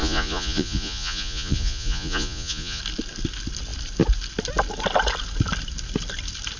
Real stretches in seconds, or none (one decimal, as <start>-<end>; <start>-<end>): 2.8-6.6